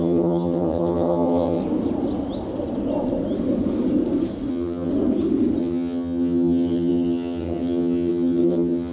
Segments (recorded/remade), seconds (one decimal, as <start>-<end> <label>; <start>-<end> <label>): 0.0-1.6 remade; 1.6-4.5 recorded; 4.5-4.9 remade; 4.9-5.6 recorded; 5.6-8.9 remade